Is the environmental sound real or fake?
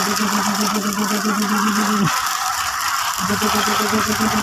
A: real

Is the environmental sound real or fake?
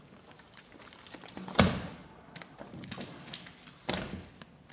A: real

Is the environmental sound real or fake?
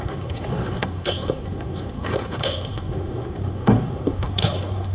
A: fake